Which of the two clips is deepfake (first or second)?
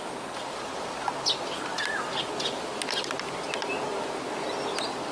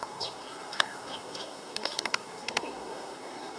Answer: second